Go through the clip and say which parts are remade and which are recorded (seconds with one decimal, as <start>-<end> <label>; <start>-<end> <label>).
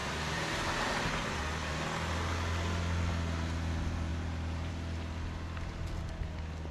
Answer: 0.0-1.4 remade; 1.4-4.1 recorded; 4.1-4.7 remade; 4.7-6.7 recorded